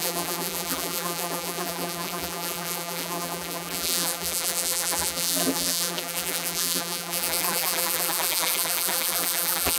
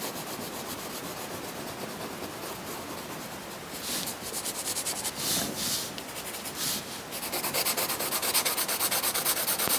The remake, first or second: first